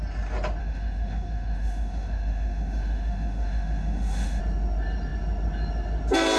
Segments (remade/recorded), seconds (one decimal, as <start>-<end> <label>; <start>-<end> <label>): 0.0-0.6 recorded; 0.6-4.4 remade; 4.4-6.4 recorded